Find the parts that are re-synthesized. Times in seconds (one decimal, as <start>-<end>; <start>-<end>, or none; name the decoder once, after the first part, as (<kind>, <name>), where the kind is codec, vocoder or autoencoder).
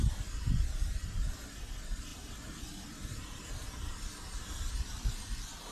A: none